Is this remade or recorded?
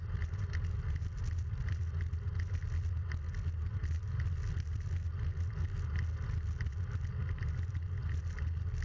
recorded